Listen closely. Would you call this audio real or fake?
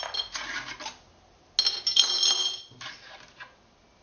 real